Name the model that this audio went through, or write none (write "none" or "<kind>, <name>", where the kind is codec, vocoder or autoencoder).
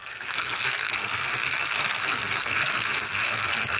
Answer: codec, SNAC